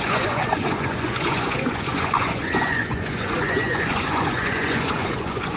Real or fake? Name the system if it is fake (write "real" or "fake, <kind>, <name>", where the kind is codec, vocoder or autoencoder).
fake, vocoder, Vocos